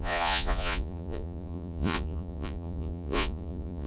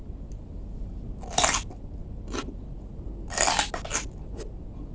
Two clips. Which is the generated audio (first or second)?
first